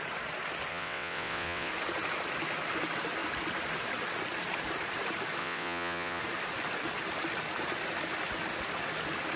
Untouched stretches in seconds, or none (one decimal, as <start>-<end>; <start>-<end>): 0.0-0.7; 1.7-5.4; 6.2-9.4